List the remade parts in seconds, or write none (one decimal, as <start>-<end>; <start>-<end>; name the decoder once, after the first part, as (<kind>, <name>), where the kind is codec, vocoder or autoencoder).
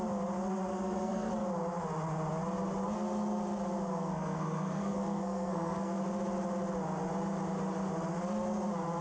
0.7-1.3 (codec, SNAC); 3.9-6.0